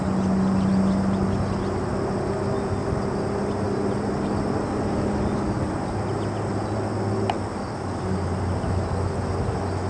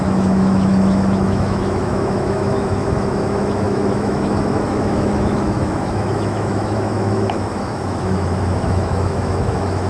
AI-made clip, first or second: second